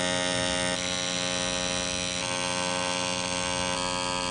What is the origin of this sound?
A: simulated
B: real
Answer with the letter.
B